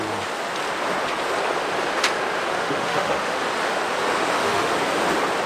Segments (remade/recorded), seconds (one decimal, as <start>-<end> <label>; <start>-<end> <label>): 0.0-2.5 recorded; 2.5-3.4 remade; 3.4-4.2 recorded; 4.2-4.7 remade; 4.7-5.5 recorded